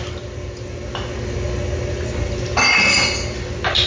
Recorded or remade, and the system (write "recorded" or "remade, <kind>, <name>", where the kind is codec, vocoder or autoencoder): recorded